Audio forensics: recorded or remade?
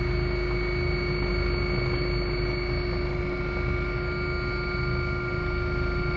recorded